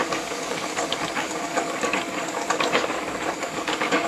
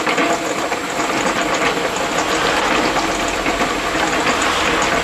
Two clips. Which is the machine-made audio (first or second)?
first